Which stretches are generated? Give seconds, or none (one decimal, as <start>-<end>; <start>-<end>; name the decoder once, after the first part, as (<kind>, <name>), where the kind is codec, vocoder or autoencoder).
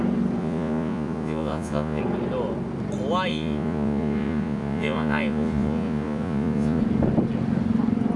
0.4-2.0 (vocoder, Vocos); 3.3-6.8